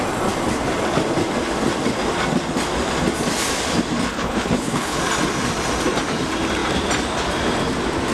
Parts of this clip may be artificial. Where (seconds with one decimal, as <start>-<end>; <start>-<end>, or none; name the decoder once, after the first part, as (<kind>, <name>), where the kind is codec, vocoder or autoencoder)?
4.1-5.0 (codec, HILCodec)